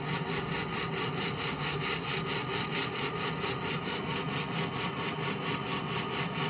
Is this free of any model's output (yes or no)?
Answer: yes